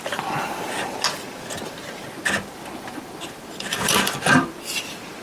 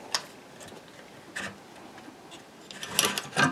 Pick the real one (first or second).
second